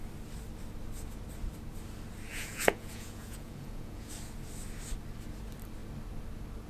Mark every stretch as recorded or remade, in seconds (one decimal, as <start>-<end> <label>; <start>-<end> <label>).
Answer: 0.0-2.3 recorded; 2.3-4.1 remade; 4.1-6.7 recorded